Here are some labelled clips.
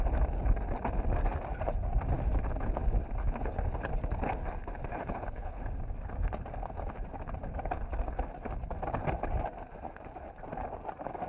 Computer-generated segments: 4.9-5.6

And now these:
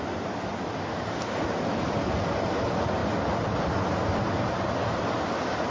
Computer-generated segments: none

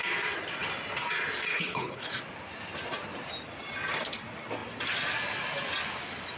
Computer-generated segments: 1.5-2.2

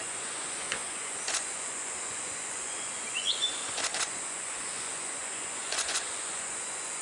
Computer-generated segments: 0.0-7.0

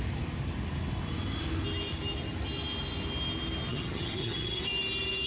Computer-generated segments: 3.7-4.6